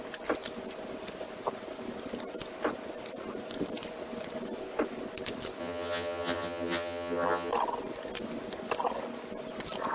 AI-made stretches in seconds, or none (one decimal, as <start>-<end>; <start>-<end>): 5.6-7.5